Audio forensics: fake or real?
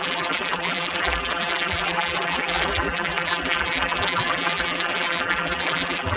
fake